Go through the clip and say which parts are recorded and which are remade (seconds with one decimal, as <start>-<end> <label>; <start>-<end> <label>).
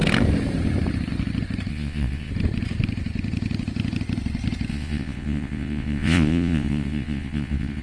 0.0-1.7 recorded; 1.7-2.3 remade; 2.3-4.7 recorded; 4.7-7.8 remade